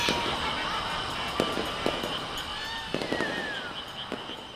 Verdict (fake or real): real